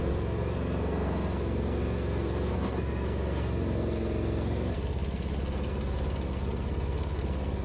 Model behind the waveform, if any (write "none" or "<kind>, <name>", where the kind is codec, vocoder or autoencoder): codec, SNAC